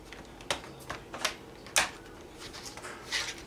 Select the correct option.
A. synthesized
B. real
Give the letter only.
B